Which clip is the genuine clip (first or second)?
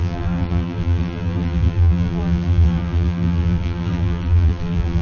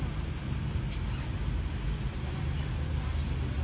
second